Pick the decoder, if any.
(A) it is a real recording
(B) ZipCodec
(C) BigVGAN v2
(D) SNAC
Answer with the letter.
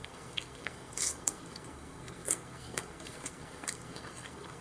D